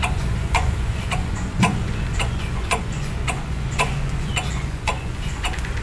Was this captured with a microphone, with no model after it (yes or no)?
no